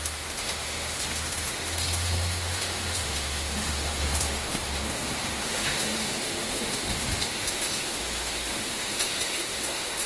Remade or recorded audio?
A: remade